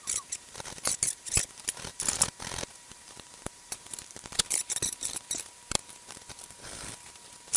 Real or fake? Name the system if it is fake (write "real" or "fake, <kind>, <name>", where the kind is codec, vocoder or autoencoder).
fake, vocoder, BigVGAN v2